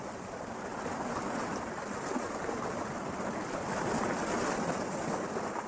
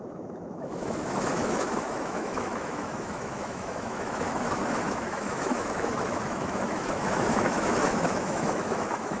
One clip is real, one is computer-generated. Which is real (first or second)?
first